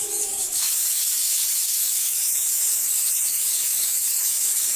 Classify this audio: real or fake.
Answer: fake